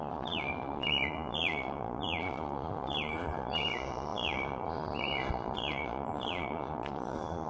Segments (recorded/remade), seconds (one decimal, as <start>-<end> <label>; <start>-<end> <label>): 0.0-7.5 remade

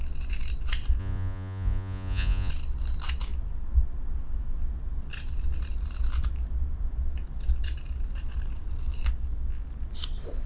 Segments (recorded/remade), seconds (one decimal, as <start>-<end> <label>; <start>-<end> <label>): 0.0-1.0 recorded; 1.0-2.5 remade; 2.5-10.5 recorded

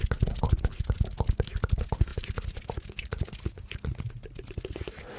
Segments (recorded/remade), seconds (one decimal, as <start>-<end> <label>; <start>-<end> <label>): 0.0-5.2 recorded

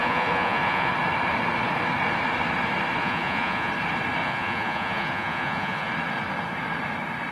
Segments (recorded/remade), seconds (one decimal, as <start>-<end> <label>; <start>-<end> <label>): 0.0-0.9 remade; 0.9-3.0 recorded; 3.0-3.7 remade; 3.7-4.2 recorded; 4.2-5.9 remade; 5.9-7.3 recorded

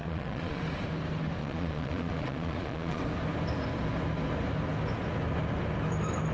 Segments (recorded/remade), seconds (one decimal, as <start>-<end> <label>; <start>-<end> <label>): 0.0-0.6 remade; 0.6-1.4 recorded; 1.4-3.0 remade; 3.0-6.3 recorded

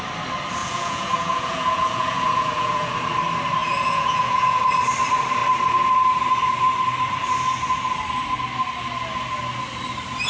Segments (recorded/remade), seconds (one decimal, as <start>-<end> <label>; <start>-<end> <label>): 0.0-0.6 recorded; 0.6-2.9 remade; 2.9-3.6 recorded; 3.6-4.6 remade; 4.6-10.3 recorded

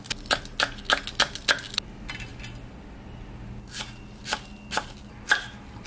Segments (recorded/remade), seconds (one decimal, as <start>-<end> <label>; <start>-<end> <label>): 0.0-5.9 recorded